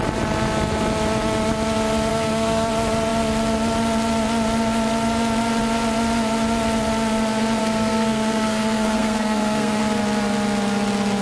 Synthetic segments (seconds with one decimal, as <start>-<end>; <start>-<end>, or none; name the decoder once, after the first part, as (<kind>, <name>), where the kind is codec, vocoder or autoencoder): 2.1-2.7 (codec, SNAC); 7.6-9.8